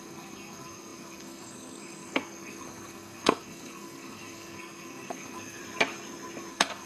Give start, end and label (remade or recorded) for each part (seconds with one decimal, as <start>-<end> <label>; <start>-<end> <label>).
0.0-5.6 remade; 5.6-6.5 recorded; 6.5-6.9 remade